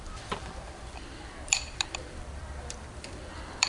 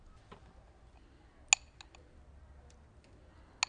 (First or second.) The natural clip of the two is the second